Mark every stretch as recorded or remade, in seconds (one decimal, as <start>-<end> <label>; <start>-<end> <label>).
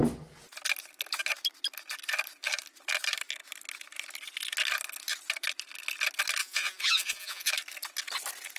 0.0-6.4 recorded; 6.4-7.5 remade; 7.5-8.6 recorded